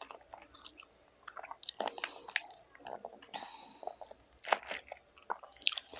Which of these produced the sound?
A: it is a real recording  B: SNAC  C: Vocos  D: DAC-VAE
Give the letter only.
A